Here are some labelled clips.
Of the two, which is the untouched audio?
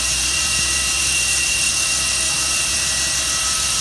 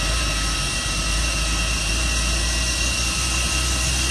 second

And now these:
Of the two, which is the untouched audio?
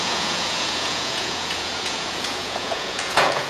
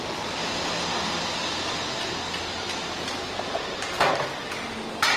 second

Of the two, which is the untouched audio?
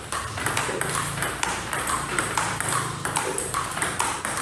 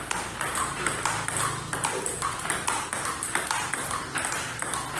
second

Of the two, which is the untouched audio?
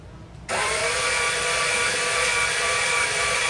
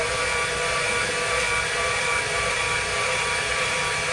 second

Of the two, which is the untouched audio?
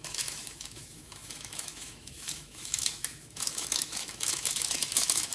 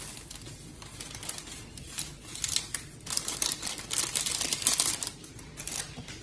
second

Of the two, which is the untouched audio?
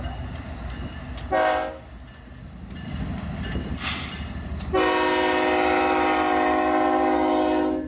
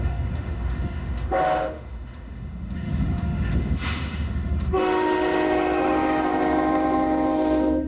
first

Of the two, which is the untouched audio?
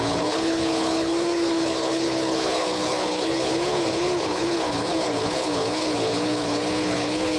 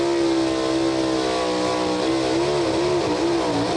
second